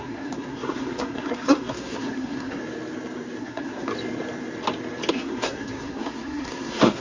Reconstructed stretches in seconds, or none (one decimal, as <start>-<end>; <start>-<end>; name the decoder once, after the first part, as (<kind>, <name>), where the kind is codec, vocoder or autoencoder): 0.0-2.6 (codec, SNAC); 3.4-3.9; 5.1-7.0